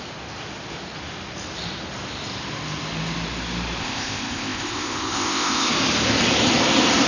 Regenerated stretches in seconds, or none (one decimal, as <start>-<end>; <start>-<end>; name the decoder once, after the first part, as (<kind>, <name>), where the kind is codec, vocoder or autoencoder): 3.8-5.7 (codec, ZipCodec)